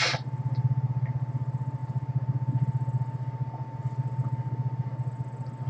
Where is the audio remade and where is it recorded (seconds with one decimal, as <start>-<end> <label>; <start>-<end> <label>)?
0.0-5.7 recorded